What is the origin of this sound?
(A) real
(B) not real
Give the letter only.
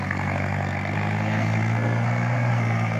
B